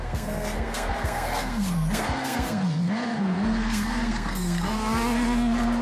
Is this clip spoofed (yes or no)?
yes